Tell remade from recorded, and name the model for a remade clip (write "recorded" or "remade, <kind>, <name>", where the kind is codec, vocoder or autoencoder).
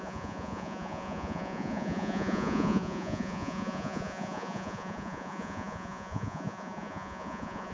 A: remade, vocoder, Vocos